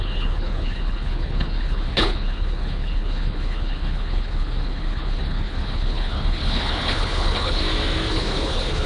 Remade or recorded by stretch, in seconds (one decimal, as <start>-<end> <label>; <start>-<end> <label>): 0.0-7.6 remade; 7.6-8.1 recorded; 8.1-8.9 remade